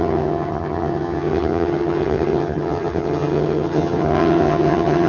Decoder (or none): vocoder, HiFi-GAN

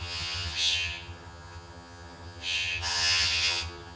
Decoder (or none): vocoder, HiFi-GAN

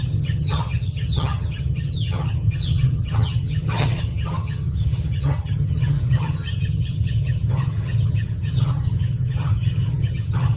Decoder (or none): vocoder, HiFi-GAN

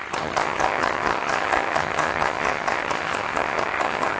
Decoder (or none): vocoder, HiFi-GAN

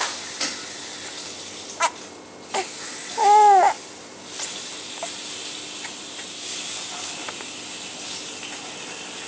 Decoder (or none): none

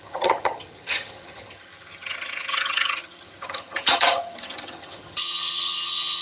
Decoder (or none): vocoder, HiFi-GAN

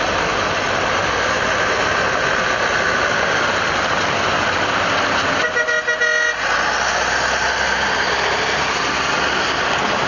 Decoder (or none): none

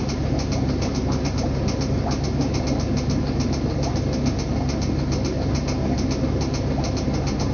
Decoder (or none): none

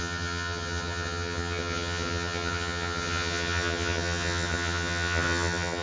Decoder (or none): vocoder, HiFi-GAN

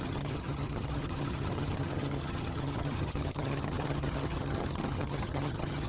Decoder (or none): vocoder, HiFi-GAN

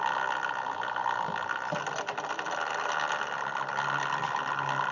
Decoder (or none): none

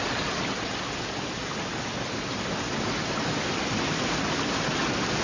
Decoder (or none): none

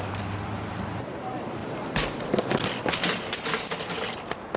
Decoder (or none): none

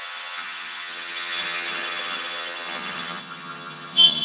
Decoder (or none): vocoder, HiFi-GAN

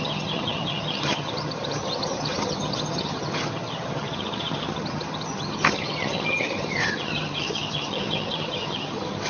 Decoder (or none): vocoder, HiFi-GAN